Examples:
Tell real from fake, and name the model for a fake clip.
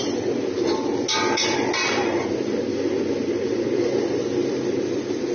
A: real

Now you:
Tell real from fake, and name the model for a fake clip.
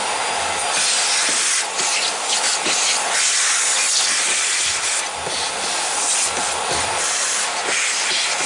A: real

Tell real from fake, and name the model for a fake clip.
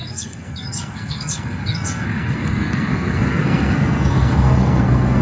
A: fake, codec, SNAC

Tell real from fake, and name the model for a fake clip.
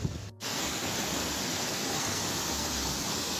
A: fake, codec, SNAC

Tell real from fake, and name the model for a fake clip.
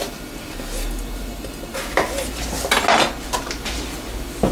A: real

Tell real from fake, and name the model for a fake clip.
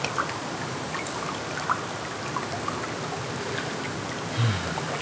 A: real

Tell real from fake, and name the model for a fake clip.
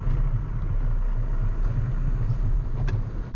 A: real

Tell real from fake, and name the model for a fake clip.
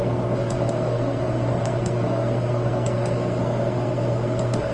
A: fake, codec, SNAC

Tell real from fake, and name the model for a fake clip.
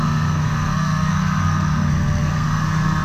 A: fake, codec, SNAC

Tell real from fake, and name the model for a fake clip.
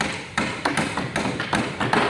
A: real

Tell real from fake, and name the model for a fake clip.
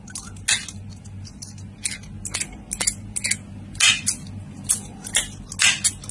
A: real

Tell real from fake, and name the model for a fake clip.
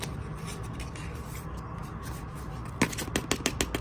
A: real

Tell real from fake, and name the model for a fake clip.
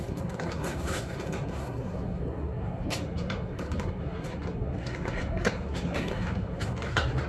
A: fake, codec, SNAC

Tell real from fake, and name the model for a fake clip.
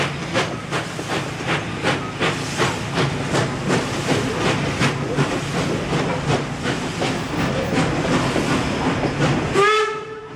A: real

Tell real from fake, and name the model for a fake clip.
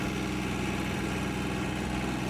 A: real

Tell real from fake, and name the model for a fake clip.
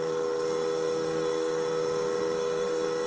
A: fake, codec, SNAC